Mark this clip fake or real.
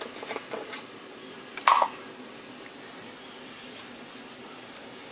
real